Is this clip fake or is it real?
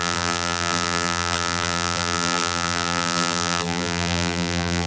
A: fake